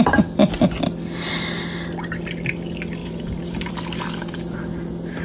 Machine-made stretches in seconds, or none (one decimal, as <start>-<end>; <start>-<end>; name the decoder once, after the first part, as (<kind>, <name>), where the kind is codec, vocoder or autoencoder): 3.0-3.7 (vocoder, BigVGAN v2)